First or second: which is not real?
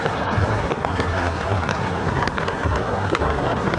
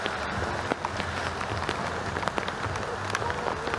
first